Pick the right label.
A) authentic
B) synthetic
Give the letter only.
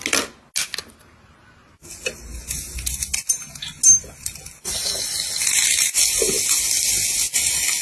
A